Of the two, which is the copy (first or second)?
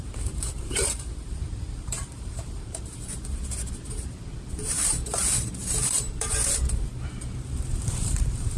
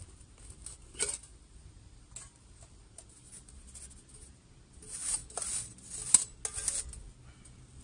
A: first